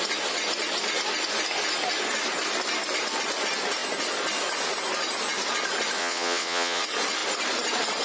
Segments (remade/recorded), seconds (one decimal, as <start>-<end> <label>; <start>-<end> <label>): 0.0-6.0 recorded; 6.0-6.8 remade; 6.8-8.0 recorded